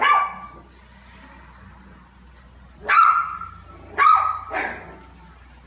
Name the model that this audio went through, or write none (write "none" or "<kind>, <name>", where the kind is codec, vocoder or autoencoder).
none